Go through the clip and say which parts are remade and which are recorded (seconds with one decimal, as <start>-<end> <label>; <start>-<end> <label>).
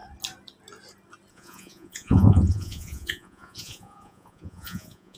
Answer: 0.0-1.3 recorded; 1.3-5.2 remade